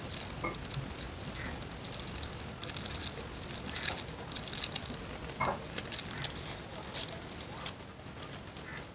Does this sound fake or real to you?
real